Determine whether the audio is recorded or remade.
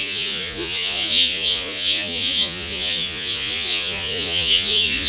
remade